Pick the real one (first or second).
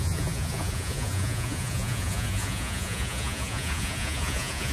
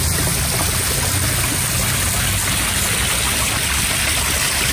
second